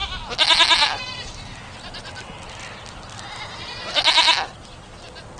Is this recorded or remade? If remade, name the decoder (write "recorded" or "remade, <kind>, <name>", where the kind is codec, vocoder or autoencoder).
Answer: recorded